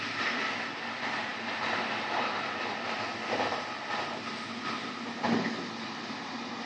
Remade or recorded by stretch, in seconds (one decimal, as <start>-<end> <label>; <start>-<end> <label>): 0.0-6.7 recorded